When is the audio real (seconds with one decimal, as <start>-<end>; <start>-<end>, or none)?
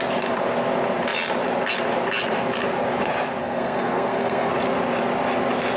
0.0-3.4; 4.5-5.8